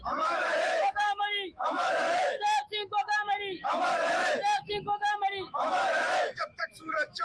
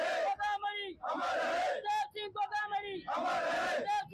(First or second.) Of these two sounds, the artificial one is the first